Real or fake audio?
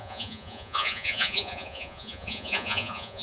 fake